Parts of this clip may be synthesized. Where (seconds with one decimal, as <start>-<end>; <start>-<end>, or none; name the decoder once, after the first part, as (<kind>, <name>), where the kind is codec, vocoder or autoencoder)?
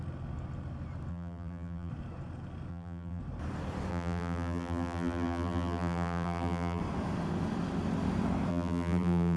1.1-1.9 (vocoder, BigVGAN v2); 2.7-3.2; 3.9-6.8; 8.5-9.4